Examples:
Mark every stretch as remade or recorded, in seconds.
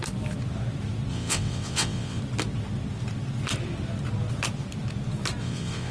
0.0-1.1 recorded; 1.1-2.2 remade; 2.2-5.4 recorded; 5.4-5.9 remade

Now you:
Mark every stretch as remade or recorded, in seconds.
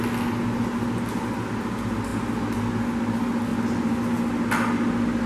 0.0-5.3 recorded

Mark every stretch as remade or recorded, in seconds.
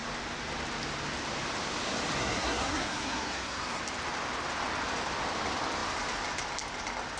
0.0-2.2 recorded; 2.2-3.8 remade; 3.8-7.2 recorded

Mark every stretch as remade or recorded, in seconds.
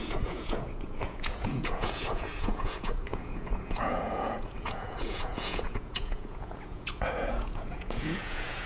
0.0-8.7 remade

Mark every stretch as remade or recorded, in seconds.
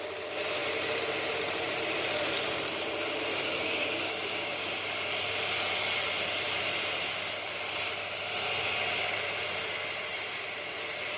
0.0-3.3 recorded; 3.3-4.7 remade; 4.7-11.2 recorded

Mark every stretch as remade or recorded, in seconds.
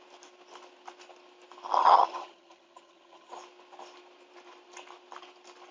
0.0-1.8 recorded; 1.8-3.3 remade; 3.3-5.7 recorded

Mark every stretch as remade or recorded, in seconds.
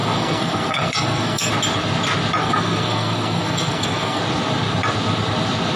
0.0-1.5 remade; 1.5-2.4 recorded; 2.4-4.2 remade; 4.2-5.8 recorded